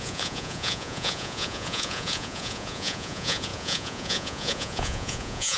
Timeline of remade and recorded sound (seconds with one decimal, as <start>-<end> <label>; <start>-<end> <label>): 0.0-5.6 remade